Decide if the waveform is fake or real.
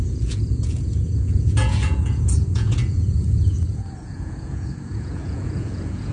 fake